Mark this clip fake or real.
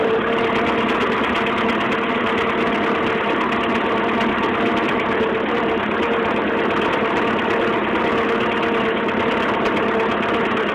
real